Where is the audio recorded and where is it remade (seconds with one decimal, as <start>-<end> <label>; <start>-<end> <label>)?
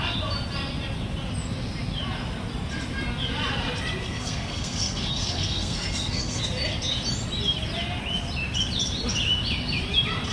0.0-4.0 recorded; 4.0-6.4 remade; 6.4-10.3 recorded